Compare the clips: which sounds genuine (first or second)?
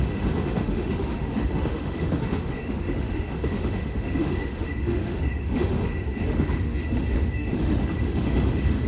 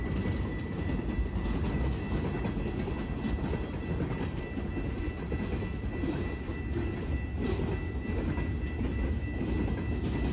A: second